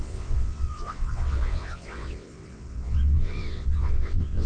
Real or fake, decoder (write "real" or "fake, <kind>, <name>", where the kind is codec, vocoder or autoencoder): fake, vocoder, WaveNeXt